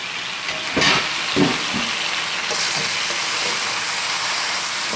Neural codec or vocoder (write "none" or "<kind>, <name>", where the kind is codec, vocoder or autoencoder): none